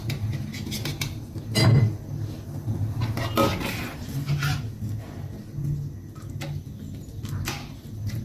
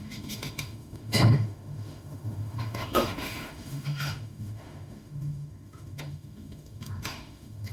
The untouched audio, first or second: first